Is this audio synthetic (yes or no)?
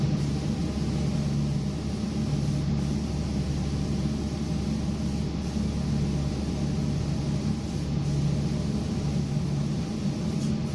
no